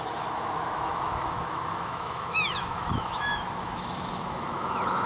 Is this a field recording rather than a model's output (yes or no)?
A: no